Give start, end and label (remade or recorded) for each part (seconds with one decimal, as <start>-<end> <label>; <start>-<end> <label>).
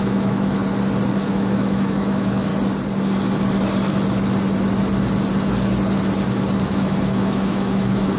0.0-0.6 remade; 0.6-1.3 recorded; 1.3-2.5 remade; 2.5-6.7 recorded; 6.7-8.2 remade